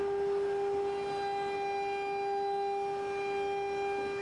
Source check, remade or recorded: recorded